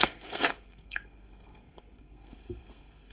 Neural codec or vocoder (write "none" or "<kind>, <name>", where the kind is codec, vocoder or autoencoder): codec, SNAC